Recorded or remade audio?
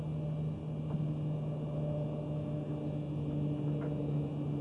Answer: recorded